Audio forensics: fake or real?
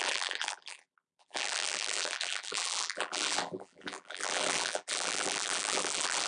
fake